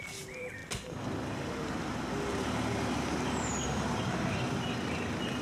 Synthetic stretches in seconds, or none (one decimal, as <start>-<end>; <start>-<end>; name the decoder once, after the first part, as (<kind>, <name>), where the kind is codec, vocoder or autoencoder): none